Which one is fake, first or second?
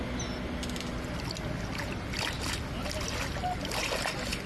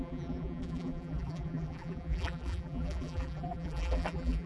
second